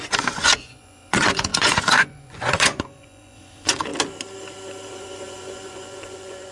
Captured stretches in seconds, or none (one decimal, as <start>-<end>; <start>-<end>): 3.9-4.9